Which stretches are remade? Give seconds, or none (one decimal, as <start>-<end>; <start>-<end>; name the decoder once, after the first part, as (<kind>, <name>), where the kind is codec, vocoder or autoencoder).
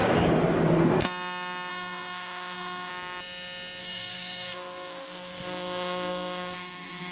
1.7-2.9 (codec, SNAC); 3.8-7.1